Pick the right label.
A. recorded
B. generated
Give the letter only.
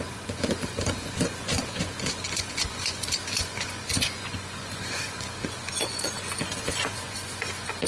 B